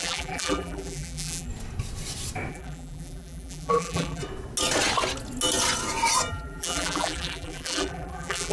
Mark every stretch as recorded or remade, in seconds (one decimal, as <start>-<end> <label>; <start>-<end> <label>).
0.0-1.5 remade; 1.5-2.5 recorded; 2.5-4.2 remade; 4.2-6.3 recorded; 6.3-8.5 remade